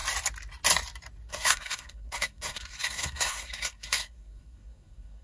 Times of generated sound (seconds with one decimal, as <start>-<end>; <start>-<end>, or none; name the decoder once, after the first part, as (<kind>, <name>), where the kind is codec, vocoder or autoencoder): 1.3-5.2 (codec, SNAC)